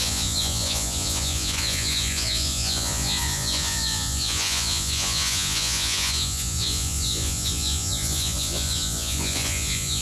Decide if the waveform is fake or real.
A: fake